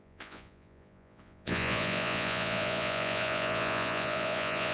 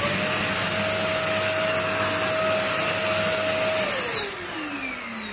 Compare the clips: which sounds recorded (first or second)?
second